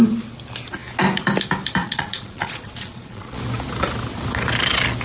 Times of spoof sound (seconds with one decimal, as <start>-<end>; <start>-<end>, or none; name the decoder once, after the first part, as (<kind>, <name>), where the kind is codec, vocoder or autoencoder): 1.8-3.4 (vocoder, Vocos)